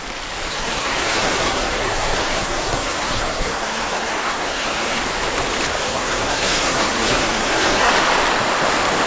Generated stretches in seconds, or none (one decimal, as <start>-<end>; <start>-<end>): 0.5-5.0; 5.8-7.9